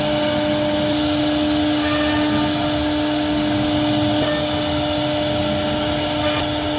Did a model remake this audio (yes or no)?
no